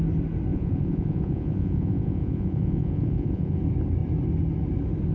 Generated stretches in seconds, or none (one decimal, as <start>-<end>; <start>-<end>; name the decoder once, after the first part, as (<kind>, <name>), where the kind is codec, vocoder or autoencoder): 0.5-3.6 (vocoder, Vocos)